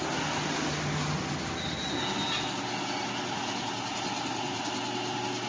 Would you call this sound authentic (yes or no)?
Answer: yes